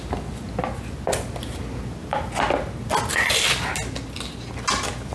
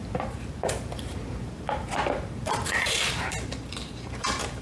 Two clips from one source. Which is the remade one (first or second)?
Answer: second